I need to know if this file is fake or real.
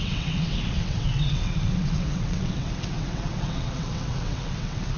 fake